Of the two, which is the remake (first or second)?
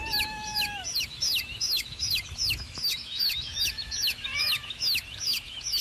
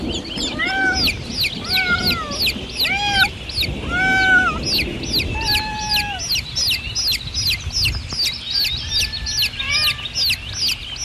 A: first